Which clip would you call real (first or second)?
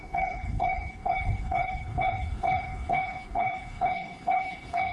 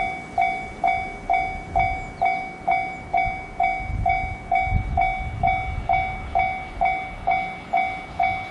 second